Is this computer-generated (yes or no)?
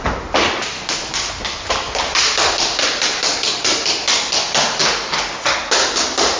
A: no